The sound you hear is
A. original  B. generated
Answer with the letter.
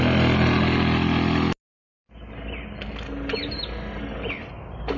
A